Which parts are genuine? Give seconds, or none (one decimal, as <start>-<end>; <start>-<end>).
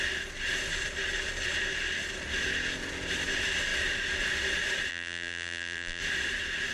0.0-4.9; 6.0-6.7